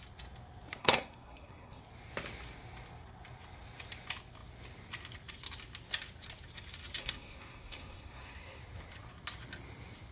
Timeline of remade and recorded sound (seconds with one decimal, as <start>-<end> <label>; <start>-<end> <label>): 0.0-0.8 recorded; 0.8-1.8 remade; 1.8-7.0 recorded; 7.0-8.6 remade; 8.6-10.1 recorded